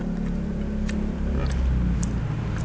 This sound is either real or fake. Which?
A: real